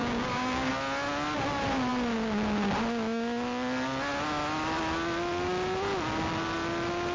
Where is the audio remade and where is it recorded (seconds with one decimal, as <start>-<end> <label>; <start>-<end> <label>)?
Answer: 0.0-0.7 remade; 0.7-7.1 recorded